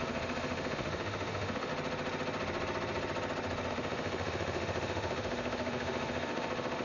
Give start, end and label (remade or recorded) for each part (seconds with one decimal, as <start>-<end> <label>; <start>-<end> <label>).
0.0-1.7 remade; 1.7-3.7 recorded; 3.7-6.8 remade

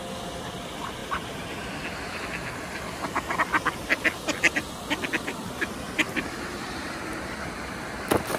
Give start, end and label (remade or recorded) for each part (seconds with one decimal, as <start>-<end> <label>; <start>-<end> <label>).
0.0-8.4 recorded

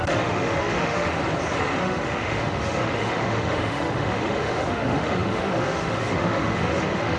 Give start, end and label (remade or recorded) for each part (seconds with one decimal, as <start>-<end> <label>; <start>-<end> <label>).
0.0-1.2 remade; 1.2-1.8 recorded; 1.8-7.2 remade

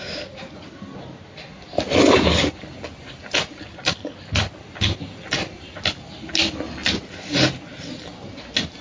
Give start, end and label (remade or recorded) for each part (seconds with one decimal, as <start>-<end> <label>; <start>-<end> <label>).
0.0-8.8 recorded

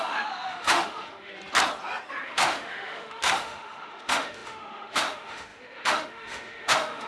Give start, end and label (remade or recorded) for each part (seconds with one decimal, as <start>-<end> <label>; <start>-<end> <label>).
0.0-1.3 remade; 1.3-2.1 recorded; 2.1-7.1 remade

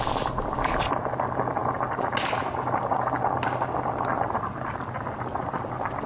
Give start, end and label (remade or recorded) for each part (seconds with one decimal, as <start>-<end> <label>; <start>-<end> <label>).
0.0-6.1 recorded

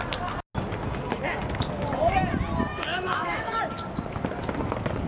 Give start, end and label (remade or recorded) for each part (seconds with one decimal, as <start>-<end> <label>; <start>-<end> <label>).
0.0-2.9 recorded; 2.9-3.6 remade; 3.6-5.1 recorded